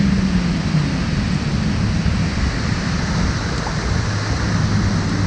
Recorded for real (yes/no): yes